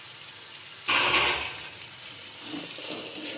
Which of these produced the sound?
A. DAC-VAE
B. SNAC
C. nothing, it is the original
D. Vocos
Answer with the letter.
C